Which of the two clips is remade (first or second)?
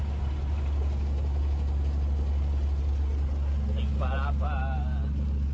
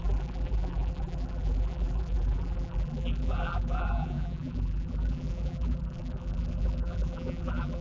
second